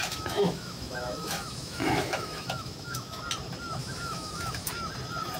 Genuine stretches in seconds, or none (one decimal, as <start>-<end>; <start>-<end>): 3.2-3.8; 4.7-5.4